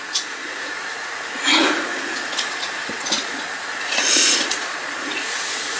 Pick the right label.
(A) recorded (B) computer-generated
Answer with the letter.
B